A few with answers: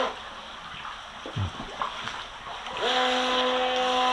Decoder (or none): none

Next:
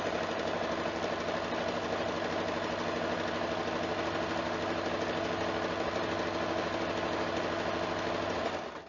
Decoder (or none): none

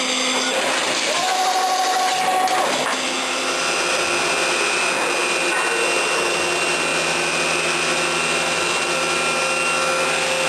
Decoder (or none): none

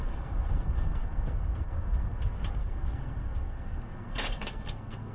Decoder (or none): codec, SNAC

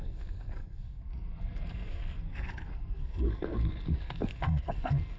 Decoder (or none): codec, SNAC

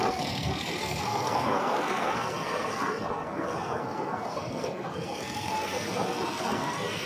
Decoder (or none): codec, SNAC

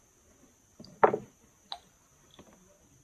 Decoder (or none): none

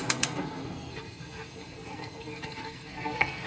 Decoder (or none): codec, SNAC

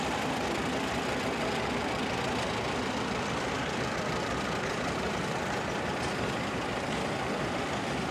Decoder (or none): none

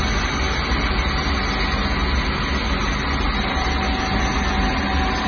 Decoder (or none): none